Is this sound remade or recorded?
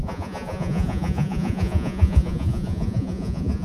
remade